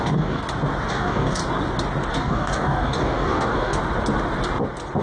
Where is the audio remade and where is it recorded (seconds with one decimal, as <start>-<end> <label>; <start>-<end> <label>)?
0.0-0.4 remade; 0.4-0.9 recorded; 0.9-1.4 remade; 1.4-2.1 recorded; 2.1-3.8 remade; 3.8-5.0 recorded